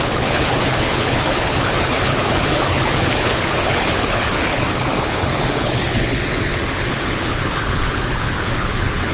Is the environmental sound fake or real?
fake